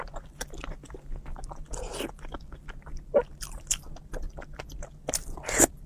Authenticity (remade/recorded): recorded